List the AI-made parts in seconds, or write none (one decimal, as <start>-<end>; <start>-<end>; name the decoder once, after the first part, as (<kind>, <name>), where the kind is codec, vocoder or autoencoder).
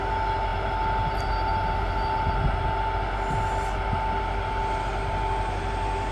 none